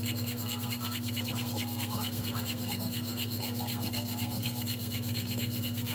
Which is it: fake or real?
fake